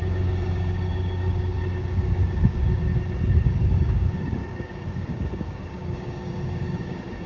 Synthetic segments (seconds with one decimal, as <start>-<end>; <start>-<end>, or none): 0.0-2.9; 3.4-7.3